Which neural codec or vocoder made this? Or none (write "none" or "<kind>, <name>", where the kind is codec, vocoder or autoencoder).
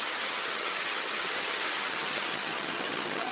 vocoder, HiFi-GAN